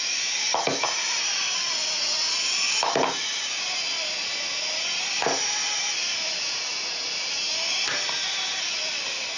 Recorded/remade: recorded